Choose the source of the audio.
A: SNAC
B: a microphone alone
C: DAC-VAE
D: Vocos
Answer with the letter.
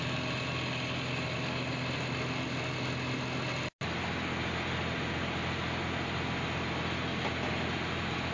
B